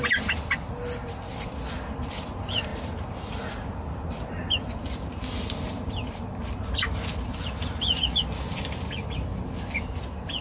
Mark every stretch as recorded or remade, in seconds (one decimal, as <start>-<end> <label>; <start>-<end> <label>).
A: 0.0-10.4 recorded